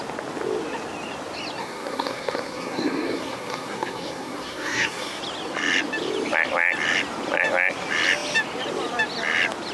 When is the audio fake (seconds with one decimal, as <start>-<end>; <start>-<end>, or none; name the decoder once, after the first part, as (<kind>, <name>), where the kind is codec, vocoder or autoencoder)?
1.6-5.2 (codec, SNAC)